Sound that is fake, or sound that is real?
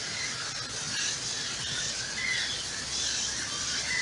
real